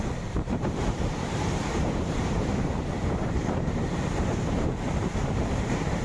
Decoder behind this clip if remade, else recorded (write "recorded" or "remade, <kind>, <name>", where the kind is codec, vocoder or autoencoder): remade, vocoder, BigVGAN v2